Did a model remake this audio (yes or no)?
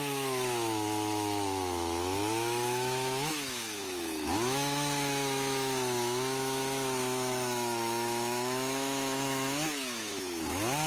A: yes